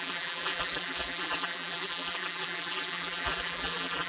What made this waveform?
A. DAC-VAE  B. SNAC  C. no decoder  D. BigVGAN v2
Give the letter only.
D